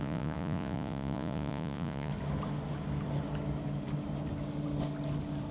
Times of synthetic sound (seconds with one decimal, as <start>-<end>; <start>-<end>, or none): 0.0-2.1